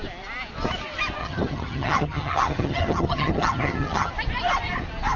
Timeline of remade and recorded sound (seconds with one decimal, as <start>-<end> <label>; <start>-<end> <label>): 0.0-1.2 recorded; 1.2-4.1 remade; 4.1-5.2 recorded